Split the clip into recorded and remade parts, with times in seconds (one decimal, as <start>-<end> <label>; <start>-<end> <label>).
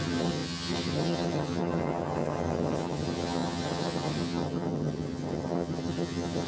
0.0-6.5 remade